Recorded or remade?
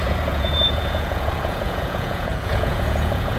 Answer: remade